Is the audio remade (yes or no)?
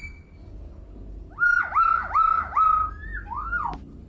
no